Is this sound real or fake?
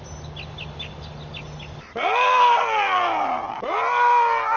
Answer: real